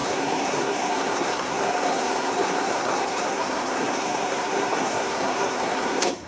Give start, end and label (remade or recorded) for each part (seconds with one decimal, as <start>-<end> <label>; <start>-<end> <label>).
0.0-6.3 remade

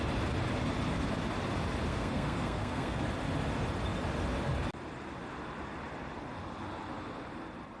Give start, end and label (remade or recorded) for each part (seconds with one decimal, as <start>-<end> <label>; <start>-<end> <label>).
0.0-1.9 recorded; 1.9-3.0 remade; 3.0-7.8 recorded

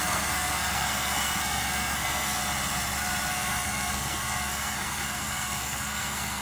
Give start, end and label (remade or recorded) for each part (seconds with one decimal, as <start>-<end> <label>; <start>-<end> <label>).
0.0-2.4 remade; 2.4-3.3 recorded; 3.3-6.4 remade

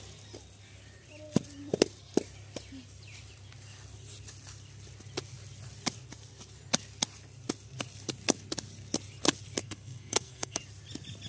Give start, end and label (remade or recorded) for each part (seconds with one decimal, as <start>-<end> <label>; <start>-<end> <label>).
0.0-9.6 recorded; 9.6-10.6 remade; 10.6-11.3 recorded

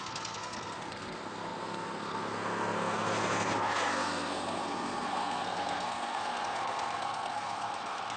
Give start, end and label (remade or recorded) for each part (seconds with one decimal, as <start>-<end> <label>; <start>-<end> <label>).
0.0-8.2 remade

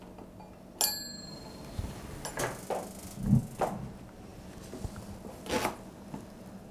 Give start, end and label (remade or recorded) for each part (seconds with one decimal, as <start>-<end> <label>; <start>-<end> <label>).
0.0-6.7 recorded

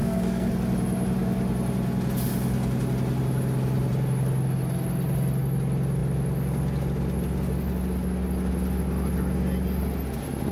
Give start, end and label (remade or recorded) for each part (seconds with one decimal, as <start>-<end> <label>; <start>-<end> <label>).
0.0-0.5 remade; 0.5-10.5 recorded

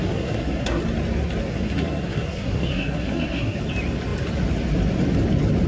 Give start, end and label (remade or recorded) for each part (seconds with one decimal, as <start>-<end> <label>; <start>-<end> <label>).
0.0-0.8 remade; 0.8-1.5 recorded; 1.5-3.6 remade; 3.6-5.7 recorded